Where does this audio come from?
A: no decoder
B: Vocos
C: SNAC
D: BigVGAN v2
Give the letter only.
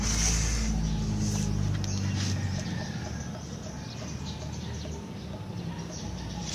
A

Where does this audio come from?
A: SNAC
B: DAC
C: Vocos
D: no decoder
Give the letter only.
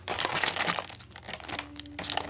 D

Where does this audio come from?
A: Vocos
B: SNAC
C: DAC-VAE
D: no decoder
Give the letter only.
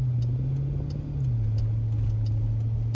D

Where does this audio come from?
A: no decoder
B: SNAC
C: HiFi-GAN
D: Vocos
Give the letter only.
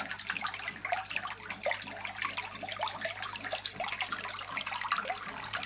A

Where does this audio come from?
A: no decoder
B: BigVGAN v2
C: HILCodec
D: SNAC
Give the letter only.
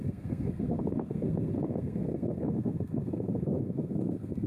D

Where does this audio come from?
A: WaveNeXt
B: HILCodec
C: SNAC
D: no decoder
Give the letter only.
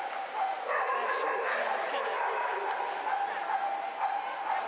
D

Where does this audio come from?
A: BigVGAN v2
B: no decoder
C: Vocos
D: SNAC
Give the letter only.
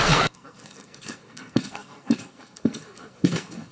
D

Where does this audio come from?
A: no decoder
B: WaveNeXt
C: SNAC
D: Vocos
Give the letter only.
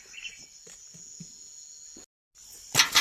A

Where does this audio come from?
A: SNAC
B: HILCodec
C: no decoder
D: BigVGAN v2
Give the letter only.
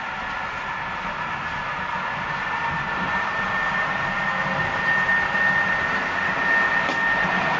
C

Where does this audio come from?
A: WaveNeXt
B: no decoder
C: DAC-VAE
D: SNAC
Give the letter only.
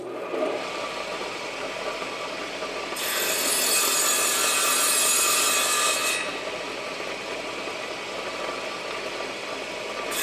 B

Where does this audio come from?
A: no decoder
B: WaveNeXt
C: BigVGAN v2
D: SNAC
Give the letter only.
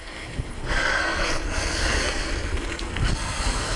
D